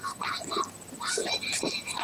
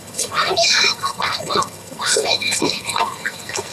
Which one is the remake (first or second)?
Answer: second